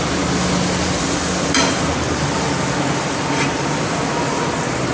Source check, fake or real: fake